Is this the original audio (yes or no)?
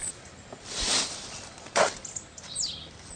no